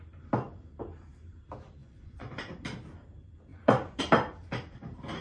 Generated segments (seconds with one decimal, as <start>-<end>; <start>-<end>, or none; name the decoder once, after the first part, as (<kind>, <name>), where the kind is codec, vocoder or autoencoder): 1.8-2.5 (vocoder, Vocos); 3.5-4.0